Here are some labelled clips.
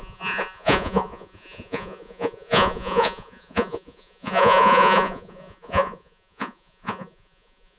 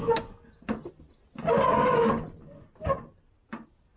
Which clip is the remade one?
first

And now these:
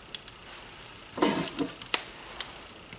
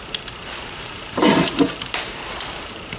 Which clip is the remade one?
second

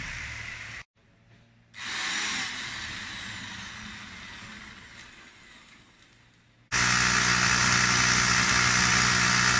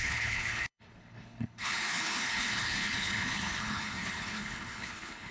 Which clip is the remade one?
second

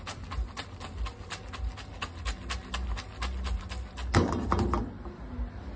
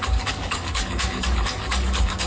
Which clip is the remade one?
second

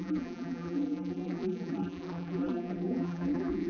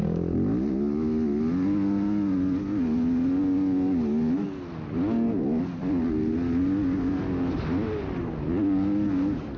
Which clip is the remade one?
first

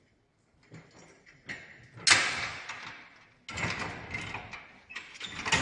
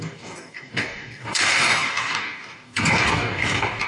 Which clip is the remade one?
second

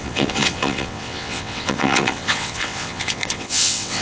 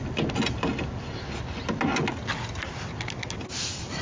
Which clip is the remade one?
first